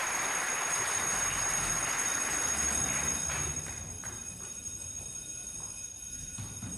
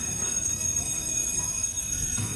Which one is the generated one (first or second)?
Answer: second